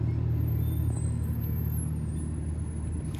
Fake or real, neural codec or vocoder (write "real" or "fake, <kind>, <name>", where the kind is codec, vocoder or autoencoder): real